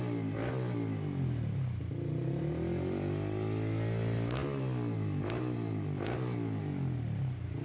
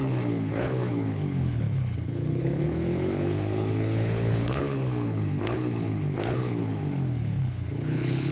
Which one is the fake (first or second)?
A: second